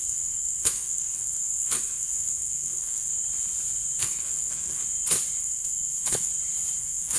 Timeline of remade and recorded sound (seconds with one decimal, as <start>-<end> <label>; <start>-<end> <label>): 0.0-3.1 remade; 3.1-4.0 recorded; 4.0-4.8 remade; 4.8-5.4 recorded; 5.4-6.3 remade; 6.3-6.8 recorded; 6.8-7.2 remade